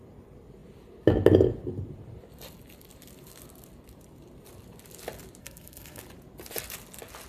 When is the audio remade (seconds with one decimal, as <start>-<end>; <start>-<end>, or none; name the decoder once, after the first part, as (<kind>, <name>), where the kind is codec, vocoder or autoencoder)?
5.4-6.0 (codec, SNAC)